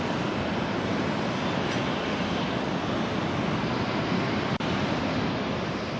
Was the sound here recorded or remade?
recorded